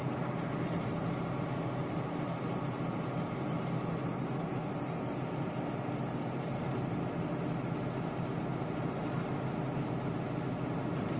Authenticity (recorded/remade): recorded